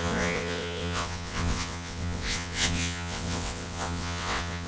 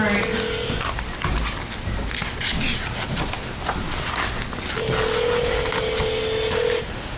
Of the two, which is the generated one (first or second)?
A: first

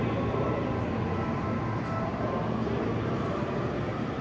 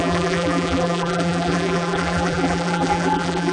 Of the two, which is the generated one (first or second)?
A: second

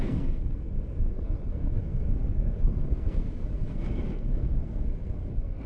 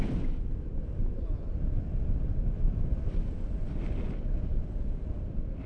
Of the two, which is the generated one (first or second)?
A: first